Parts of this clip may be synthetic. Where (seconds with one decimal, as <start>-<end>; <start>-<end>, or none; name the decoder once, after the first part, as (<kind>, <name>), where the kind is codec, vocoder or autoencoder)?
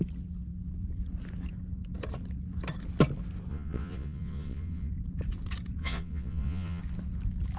3.5-4.9 (vocoder, Vocos); 5.8-6.8